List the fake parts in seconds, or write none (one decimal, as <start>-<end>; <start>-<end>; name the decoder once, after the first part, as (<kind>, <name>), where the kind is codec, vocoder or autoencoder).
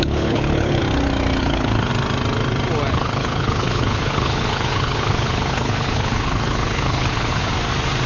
0.0-0.8 (codec, HILCodec); 1.4-1.9; 2.9-7.5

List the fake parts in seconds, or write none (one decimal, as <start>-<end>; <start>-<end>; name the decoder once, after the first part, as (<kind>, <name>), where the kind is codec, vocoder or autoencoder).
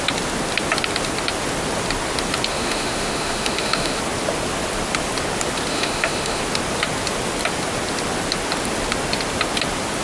2.5-4.0 (autoencoder, DAC-VAE); 5.7-6.4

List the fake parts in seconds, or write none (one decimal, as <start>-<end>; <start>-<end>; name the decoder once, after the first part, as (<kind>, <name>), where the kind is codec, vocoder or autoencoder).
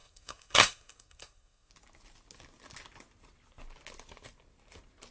0.0-1.7 (codec, SNAC)